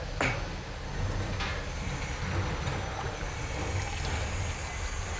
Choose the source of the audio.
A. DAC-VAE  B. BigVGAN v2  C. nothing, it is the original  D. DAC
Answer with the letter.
C